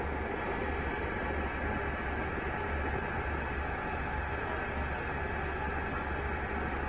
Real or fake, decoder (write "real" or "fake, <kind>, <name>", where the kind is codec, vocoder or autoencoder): real